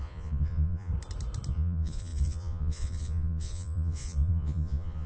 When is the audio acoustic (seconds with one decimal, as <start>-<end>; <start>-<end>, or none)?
0.9-1.5